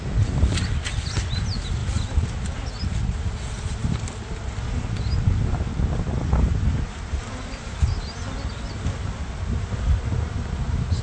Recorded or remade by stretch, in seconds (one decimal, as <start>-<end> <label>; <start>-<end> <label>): 0.0-11.0 recorded